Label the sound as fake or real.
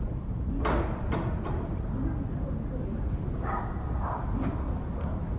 fake